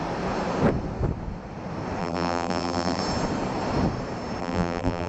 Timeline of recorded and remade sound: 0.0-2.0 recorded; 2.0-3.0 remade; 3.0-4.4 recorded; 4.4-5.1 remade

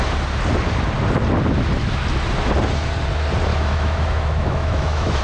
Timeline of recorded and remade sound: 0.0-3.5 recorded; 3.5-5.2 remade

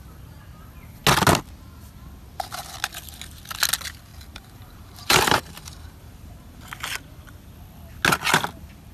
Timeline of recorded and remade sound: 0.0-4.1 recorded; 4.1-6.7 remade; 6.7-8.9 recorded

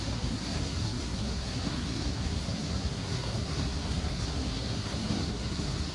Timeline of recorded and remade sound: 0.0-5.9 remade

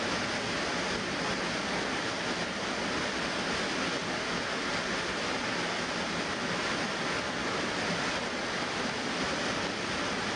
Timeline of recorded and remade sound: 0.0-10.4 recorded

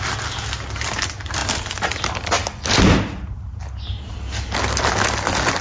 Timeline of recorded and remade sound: 0.0-5.6 recorded

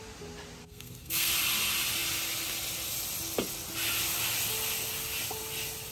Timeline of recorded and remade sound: 0.0-0.6 recorded; 0.6-1.3 remade; 1.3-5.9 recorded

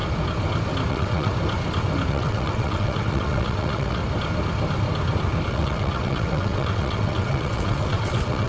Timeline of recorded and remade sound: 0.0-0.9 recorded; 0.9-1.3 remade; 1.3-2.1 recorded; 2.1-4.0 remade; 4.0-5.5 recorded; 5.5-8.5 remade